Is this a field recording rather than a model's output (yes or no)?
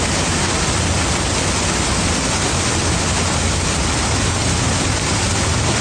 yes